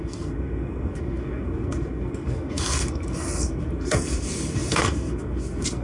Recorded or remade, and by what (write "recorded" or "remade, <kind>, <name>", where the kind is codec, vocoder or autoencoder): remade, codec, SNAC